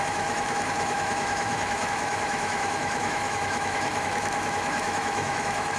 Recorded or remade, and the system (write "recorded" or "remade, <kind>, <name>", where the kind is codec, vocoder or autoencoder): remade, autoencoder, DAC-VAE